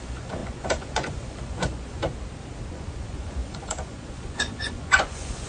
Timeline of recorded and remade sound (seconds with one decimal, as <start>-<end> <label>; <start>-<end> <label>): 0.0-2.0 remade; 2.0-2.7 recorded; 2.7-5.5 remade